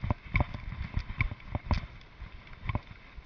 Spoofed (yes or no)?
no